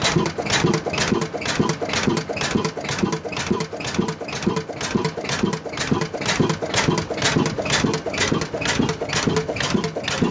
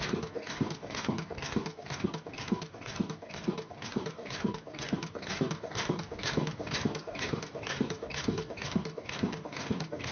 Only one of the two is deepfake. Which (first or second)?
second